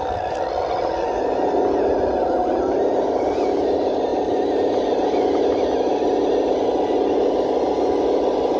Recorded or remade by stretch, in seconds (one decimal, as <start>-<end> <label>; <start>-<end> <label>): 0.0-8.6 recorded